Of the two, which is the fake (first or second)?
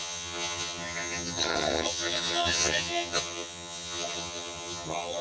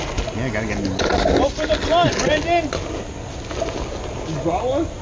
first